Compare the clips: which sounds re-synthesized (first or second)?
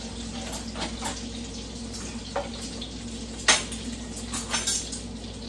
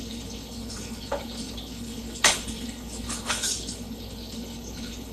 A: second